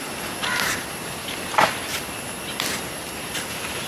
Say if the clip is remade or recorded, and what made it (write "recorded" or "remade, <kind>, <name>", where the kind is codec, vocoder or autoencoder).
recorded